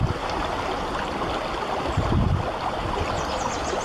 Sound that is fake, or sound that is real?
real